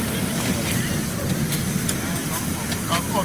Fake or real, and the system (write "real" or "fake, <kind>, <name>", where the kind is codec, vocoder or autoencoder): real